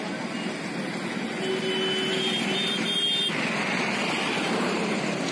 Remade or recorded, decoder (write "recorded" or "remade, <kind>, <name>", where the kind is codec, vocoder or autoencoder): recorded